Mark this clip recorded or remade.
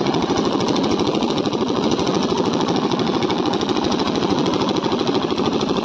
remade